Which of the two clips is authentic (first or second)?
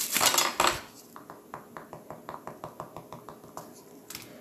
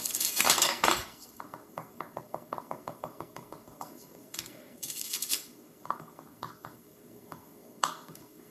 first